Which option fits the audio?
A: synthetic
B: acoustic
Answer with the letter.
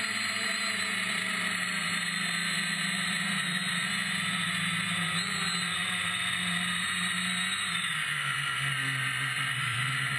A